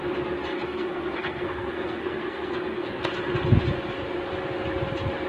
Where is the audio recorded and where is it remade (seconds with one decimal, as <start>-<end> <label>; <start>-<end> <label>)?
0.0-0.5 recorded; 0.5-3.0 remade; 3.0-5.3 recorded